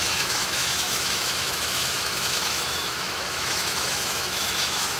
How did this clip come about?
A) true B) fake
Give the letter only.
B